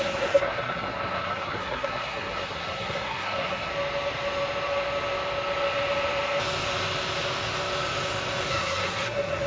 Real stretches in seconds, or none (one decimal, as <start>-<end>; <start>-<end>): 3.7-8.5